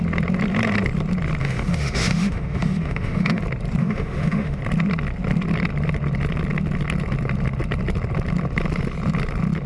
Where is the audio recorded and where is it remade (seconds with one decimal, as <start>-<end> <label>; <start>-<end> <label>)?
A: 0.0-1.4 recorded; 1.4-3.4 remade; 3.4-3.8 recorded; 3.8-4.6 remade; 4.6-9.7 recorded